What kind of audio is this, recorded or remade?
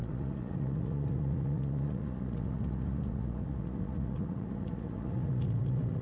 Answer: remade